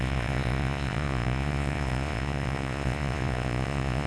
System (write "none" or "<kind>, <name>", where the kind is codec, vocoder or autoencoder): vocoder, Vocos